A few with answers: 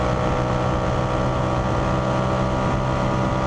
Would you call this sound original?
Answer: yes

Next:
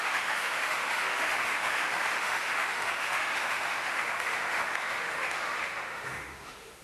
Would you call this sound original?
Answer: no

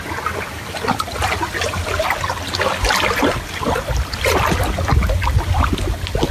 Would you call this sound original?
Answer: yes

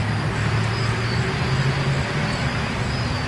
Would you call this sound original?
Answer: yes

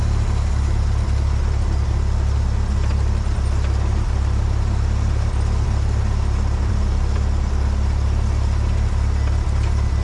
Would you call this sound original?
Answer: yes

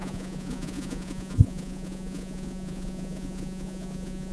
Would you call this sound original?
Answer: no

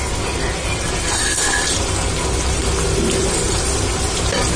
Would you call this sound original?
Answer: yes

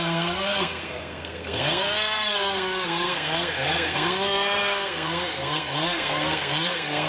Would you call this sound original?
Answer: no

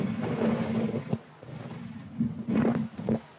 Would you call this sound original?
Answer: yes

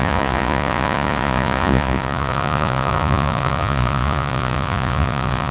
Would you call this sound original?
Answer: no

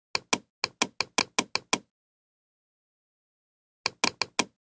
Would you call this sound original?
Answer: yes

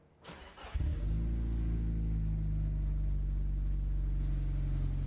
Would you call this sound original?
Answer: yes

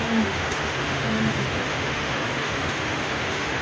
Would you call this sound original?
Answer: no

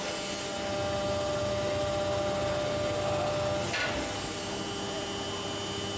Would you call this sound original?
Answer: yes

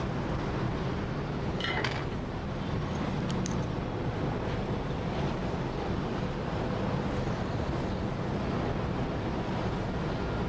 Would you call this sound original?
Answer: yes